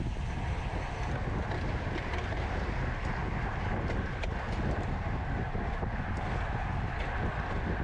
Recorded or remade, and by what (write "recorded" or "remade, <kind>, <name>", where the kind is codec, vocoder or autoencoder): recorded